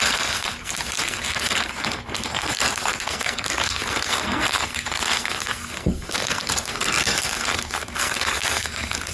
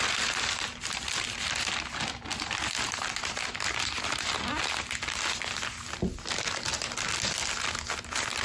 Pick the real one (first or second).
second